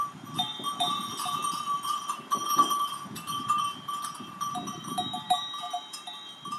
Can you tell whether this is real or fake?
fake